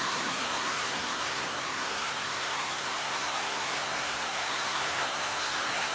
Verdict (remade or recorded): remade